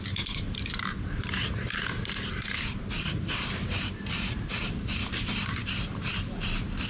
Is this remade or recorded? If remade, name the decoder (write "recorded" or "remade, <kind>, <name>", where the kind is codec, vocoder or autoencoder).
remade, vocoder, BigVGAN v2